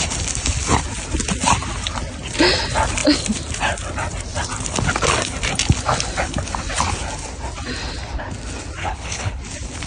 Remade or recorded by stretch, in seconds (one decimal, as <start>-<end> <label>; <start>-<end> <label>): 0.0-8.8 recorded; 8.8-9.4 remade; 9.4-9.9 recorded

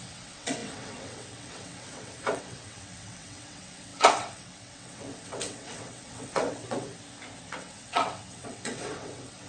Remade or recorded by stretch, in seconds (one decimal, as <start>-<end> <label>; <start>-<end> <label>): 0.0-6.9 remade; 6.9-7.5 recorded; 7.5-9.5 remade

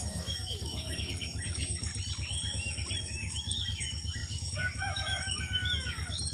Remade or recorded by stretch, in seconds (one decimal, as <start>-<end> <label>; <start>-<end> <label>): 0.0-1.9 remade; 1.9-3.0 recorded; 3.0-6.3 remade